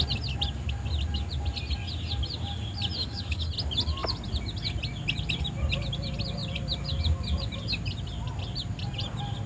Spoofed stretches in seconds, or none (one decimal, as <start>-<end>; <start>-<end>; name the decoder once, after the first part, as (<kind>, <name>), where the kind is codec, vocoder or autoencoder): 3.0-3.5 (codec, DAC)